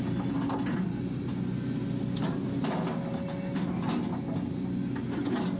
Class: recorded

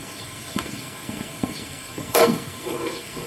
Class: remade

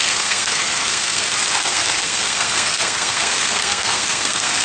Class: remade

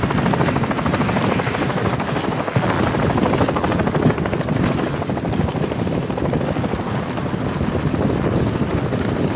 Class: recorded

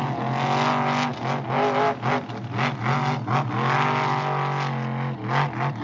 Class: recorded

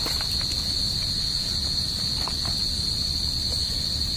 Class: recorded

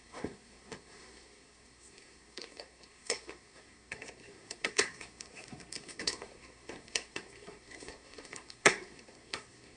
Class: remade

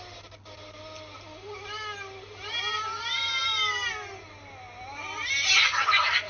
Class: recorded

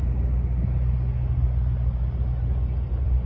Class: recorded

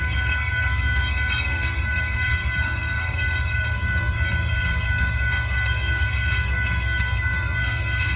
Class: remade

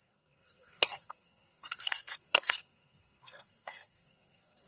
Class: remade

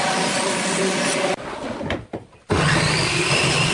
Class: recorded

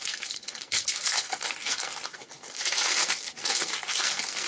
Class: remade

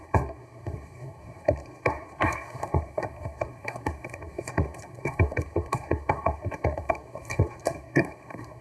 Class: remade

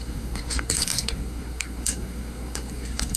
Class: remade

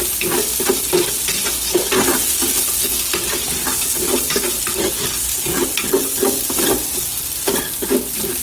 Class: recorded